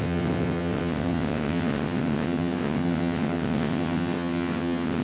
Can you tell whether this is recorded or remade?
remade